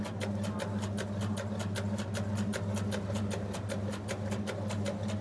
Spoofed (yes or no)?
no